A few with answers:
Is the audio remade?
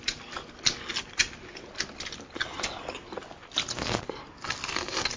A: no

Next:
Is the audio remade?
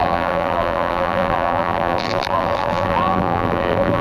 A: yes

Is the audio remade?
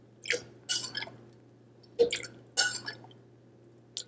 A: no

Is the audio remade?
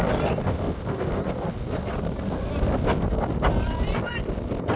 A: no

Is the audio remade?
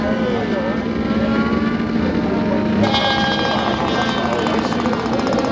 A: no